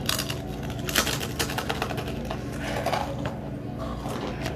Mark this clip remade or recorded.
recorded